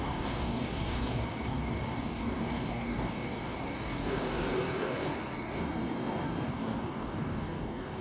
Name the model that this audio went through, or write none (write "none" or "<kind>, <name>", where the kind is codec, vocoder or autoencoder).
codec, DAC